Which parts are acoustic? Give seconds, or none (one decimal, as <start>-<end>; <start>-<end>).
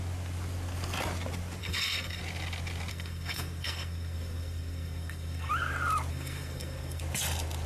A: 0.0-1.6; 2.2-2.9; 5.5-6.1; 7.0-7.7